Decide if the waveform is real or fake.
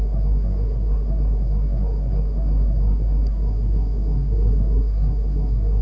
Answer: fake